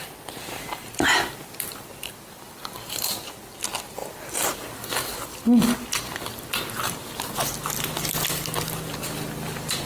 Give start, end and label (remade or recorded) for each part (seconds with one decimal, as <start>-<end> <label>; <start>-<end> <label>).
0.0-9.9 remade